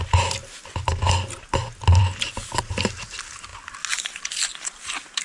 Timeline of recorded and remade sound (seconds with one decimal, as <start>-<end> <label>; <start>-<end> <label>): 0.0-5.2 recorded